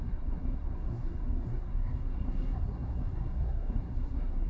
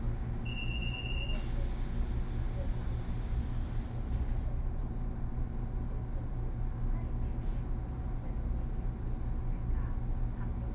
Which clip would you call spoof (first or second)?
first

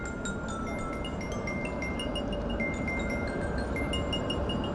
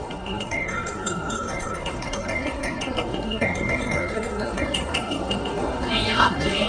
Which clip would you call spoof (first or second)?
second